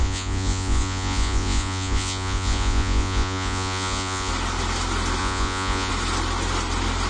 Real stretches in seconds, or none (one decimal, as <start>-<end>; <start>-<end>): 4.3-5.2; 5.9-7.1